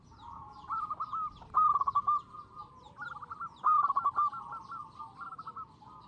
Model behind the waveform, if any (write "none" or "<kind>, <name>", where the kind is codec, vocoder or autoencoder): none